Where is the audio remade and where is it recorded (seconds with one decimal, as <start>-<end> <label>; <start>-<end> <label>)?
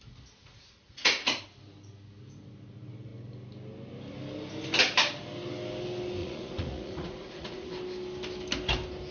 0.0-0.4 recorded; 0.4-1.4 remade; 1.4-6.2 recorded; 6.2-7.7 remade; 7.7-9.1 recorded